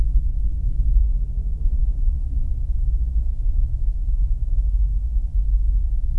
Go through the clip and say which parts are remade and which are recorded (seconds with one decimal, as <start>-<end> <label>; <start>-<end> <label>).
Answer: 0.0-1.0 remade; 1.0-1.6 recorded; 1.6-2.4 remade; 2.4-2.9 recorded; 2.9-5.3 remade; 5.3-6.2 recorded